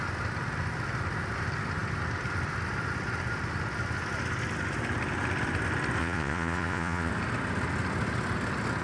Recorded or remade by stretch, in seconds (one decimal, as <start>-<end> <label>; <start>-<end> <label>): 0.0-6.0 recorded; 6.0-7.1 remade; 7.1-8.8 recorded